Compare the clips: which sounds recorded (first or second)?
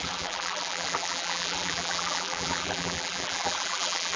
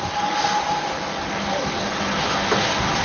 second